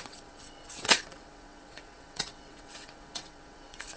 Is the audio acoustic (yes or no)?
no